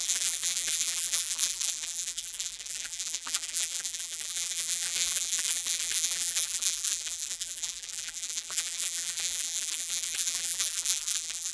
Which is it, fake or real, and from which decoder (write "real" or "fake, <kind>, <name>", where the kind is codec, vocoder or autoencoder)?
fake, vocoder, BigVGAN v2